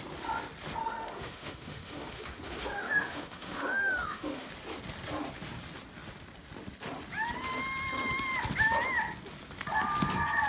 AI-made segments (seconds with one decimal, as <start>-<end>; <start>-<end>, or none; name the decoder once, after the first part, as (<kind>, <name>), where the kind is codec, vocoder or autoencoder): 0.8-4.5 (autoencoder, DAC-VAE)